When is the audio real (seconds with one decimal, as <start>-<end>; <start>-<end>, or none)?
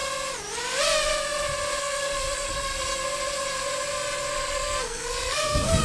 0.0-1.8; 2.7-4.3